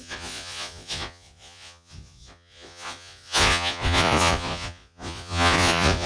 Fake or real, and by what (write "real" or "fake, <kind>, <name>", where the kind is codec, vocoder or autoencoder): fake, vocoder, Vocos